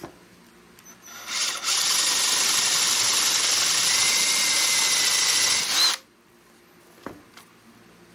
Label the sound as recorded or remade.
recorded